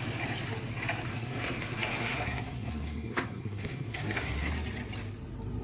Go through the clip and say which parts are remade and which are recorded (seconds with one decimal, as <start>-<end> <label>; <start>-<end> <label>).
0.0-1.1 recorded; 1.1-4.5 remade; 4.5-5.6 recorded